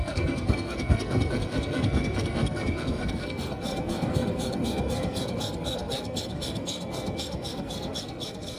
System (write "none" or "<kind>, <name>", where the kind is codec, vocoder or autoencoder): codec, SNAC